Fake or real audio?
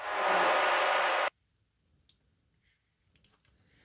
real